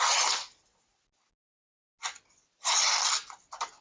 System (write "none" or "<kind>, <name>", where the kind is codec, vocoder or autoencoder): none